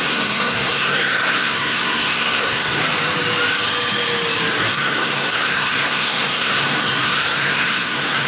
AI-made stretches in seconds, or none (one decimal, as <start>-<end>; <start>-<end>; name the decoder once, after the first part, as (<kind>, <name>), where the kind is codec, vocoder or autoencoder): 0.0-2.8 (codec, SNAC); 4.6-8.3